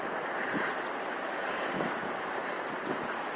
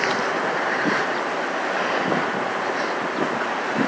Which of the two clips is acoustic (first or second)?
first